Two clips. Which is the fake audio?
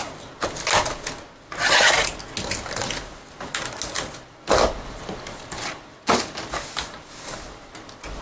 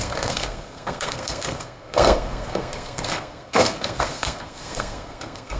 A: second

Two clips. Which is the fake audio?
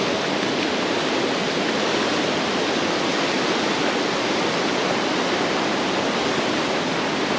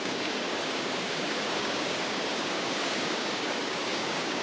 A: second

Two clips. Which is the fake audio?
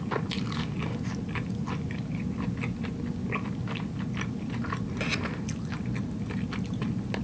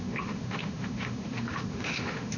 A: second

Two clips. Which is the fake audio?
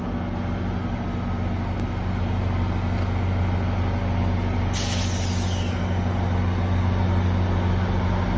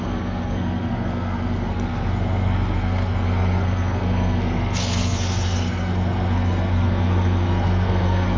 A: second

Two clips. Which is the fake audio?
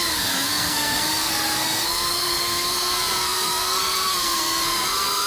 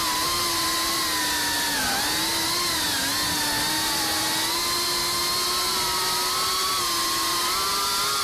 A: first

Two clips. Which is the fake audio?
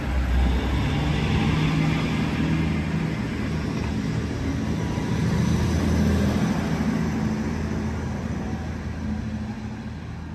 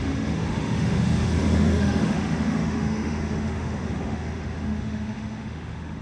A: second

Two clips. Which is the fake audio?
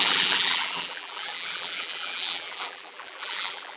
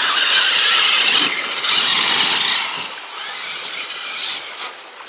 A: first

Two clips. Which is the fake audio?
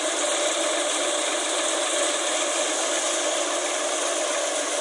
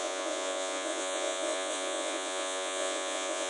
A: second